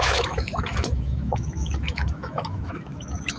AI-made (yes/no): yes